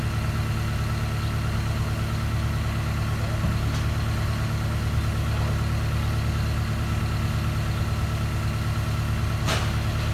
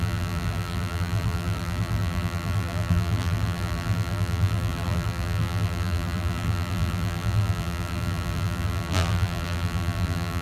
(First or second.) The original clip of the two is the first